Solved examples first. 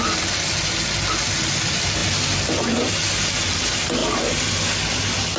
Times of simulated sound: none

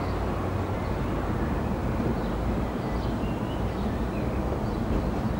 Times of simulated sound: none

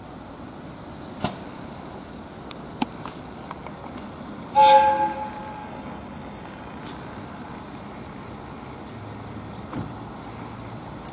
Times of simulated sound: 5.6-6.8 (codec, DAC)

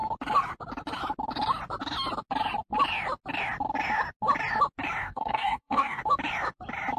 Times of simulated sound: 5.0-6.0 (codec, DAC)

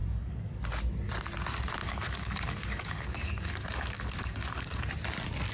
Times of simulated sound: 0.0-0.6 (codec, DAC); 1.8-4.8

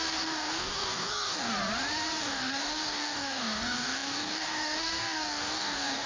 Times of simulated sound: 0.0-1.5 (codec, DAC); 2.2-6.1

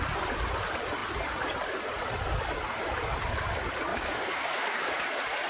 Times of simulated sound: 3.9-4.9 (codec, DAC)

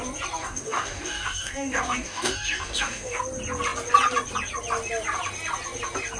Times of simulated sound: 0.4-3.2 (codec, DAC)